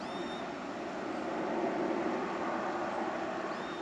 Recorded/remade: recorded